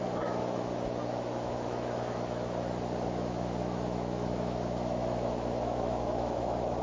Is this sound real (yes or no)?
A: no